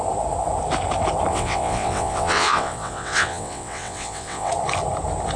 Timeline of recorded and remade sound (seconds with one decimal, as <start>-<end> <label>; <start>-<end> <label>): 0.0-1.3 recorded; 1.3-4.5 remade; 4.5-5.4 recorded